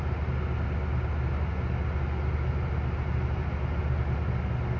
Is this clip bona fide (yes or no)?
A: yes